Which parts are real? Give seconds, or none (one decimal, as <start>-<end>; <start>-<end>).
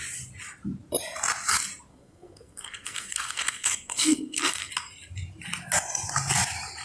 0.0-1.9; 4.7-6.8